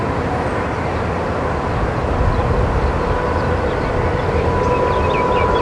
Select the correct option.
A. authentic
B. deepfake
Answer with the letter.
A